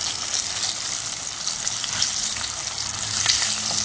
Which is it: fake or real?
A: real